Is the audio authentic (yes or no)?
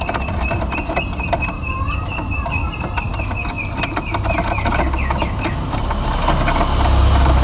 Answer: yes